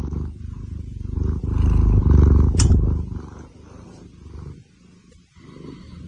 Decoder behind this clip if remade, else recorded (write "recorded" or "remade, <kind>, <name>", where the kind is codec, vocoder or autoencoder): recorded